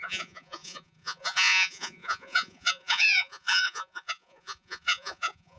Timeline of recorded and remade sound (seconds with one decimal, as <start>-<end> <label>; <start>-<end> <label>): 0.0-5.6 remade